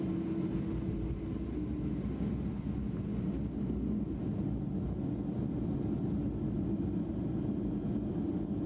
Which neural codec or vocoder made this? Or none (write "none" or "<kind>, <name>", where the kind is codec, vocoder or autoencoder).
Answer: none